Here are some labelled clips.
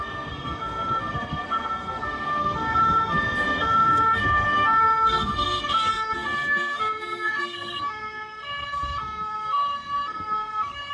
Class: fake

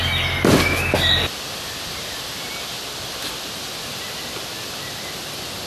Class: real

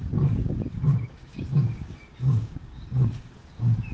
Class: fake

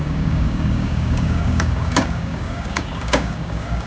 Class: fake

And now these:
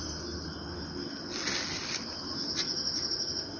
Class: real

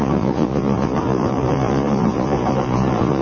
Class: fake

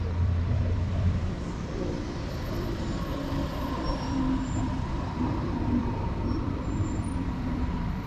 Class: fake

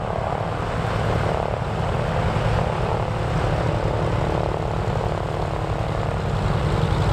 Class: real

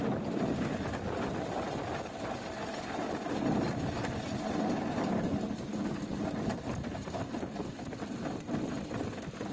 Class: real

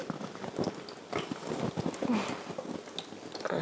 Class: real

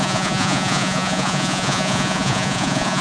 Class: fake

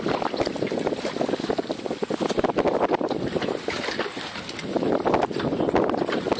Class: real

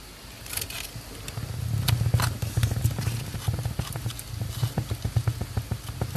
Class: real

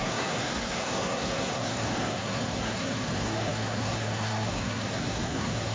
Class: fake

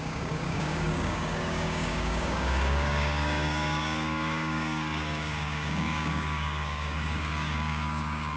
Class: fake